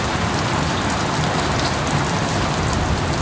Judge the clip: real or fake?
real